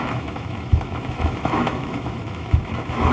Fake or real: fake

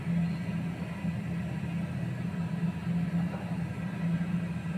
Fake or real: real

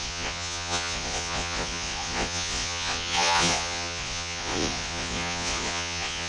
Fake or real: fake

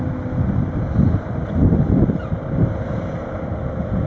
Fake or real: real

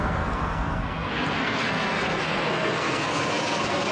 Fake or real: fake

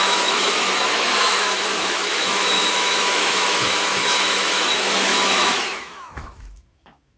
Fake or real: fake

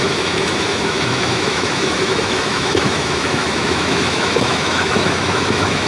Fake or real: fake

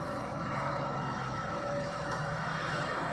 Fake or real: fake